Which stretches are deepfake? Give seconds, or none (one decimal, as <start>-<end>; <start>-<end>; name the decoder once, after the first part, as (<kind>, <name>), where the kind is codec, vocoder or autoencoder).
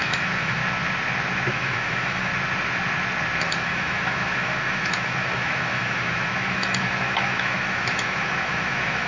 0.0-0.6 (autoencoder, DAC-VAE); 1.5-2.3; 3.4-9.1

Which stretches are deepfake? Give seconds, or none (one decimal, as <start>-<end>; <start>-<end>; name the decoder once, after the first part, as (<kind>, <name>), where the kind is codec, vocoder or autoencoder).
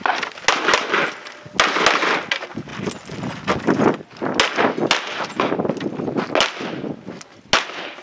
none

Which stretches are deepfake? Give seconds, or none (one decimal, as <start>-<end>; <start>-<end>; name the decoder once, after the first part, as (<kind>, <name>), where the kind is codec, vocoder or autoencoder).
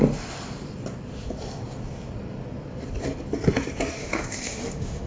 4.0-5.1 (autoencoder, DAC-VAE)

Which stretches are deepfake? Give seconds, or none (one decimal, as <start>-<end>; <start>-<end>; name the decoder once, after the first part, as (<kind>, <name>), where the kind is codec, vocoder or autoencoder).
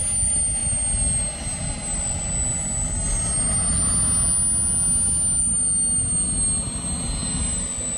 none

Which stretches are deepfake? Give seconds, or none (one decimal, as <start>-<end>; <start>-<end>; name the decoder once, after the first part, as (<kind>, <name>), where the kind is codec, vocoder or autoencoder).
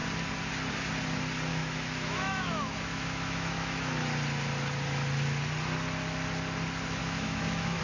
1.5-3.9 (autoencoder, DAC-VAE); 7.0-7.8